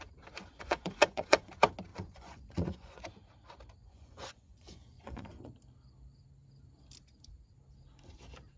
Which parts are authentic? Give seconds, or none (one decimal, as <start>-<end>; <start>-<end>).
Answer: 0.0-0.4; 1.5-1.9; 3.0-3.8; 5.5-8.6